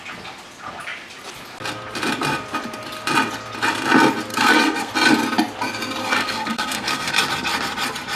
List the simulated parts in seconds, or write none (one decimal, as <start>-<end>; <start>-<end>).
4.3-4.9; 6.0-7.1